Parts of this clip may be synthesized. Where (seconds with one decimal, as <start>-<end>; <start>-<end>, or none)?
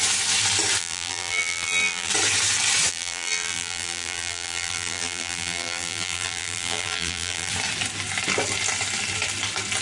0.8-2.1; 2.9-7.5